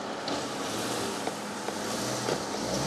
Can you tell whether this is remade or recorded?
recorded